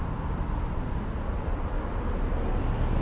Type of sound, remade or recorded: recorded